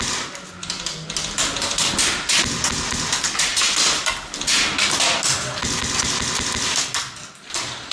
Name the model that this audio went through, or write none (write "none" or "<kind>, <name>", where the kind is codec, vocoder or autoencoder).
none